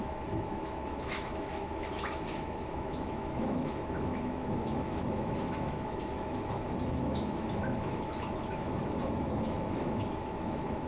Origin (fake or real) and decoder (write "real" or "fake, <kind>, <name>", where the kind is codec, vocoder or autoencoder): fake, autoencoder, DAC-VAE